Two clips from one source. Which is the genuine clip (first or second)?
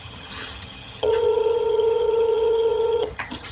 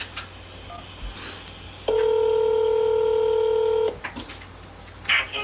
second